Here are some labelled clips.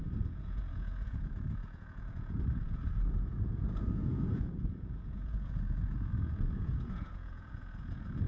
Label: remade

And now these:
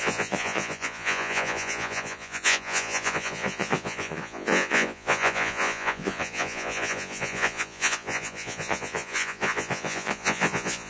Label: remade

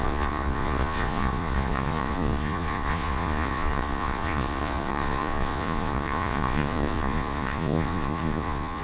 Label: remade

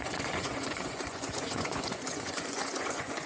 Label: remade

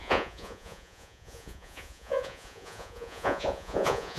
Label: remade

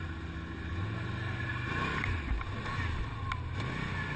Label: recorded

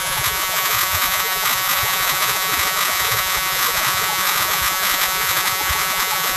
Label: remade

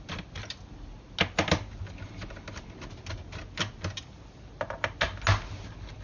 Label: recorded